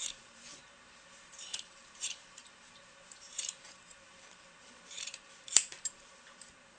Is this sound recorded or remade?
remade